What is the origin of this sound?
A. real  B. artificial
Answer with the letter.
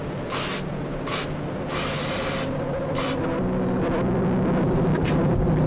A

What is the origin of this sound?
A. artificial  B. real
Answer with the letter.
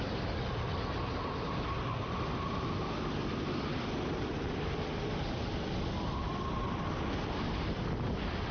B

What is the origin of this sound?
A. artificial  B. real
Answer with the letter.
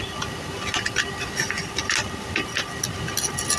B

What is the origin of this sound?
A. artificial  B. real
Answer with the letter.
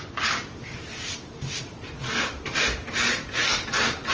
A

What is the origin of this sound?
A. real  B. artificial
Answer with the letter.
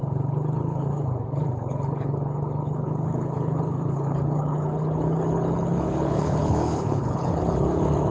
B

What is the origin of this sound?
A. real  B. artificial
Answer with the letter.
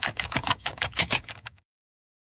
B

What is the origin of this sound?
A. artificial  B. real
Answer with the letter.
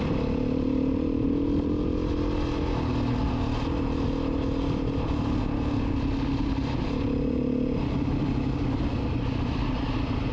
B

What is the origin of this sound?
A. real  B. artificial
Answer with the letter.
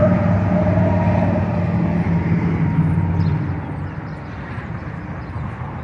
A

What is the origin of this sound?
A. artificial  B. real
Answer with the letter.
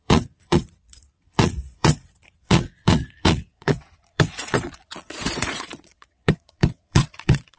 A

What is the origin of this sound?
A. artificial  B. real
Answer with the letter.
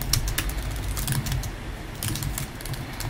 B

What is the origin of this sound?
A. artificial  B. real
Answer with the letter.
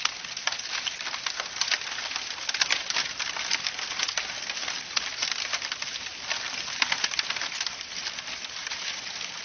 B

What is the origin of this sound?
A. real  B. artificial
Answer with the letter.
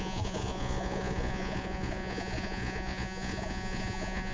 B